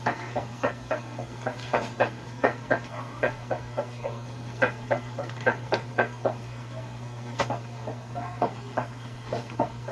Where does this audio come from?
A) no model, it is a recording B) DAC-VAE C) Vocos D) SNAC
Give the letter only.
D